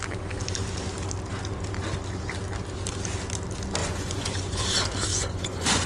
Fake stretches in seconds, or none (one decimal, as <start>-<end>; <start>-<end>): 3.8-4.6; 5.1-5.9